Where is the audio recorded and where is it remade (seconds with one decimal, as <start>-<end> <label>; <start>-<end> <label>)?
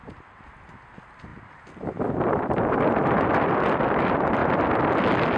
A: 0.0-4.4 remade; 4.4-5.4 recorded